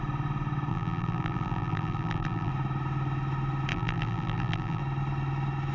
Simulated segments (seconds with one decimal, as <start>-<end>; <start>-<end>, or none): 0.7-2.5; 3.7-4.8